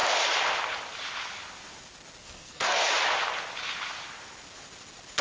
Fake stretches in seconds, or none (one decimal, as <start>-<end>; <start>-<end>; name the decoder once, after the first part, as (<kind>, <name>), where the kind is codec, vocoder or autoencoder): 2.2-2.8 (codec, SNAC)